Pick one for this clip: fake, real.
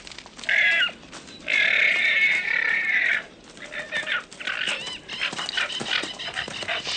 real